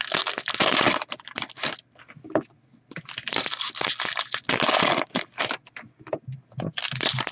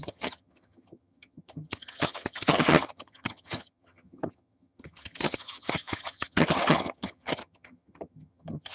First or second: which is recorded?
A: first